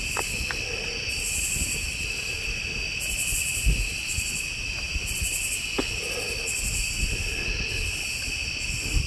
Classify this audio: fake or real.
real